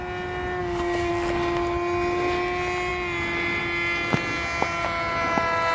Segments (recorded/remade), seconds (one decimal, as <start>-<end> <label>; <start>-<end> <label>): 0.0-0.6 recorded; 0.6-1.1 remade; 1.1-5.7 recorded